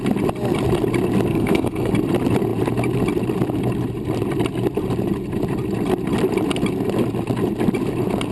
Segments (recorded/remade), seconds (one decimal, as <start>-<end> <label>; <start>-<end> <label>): 0.0-1.3 recorded; 1.3-1.9 remade; 1.9-8.3 recorded